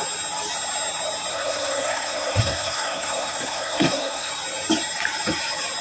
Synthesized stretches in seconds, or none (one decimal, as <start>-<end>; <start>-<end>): 1.3-4.3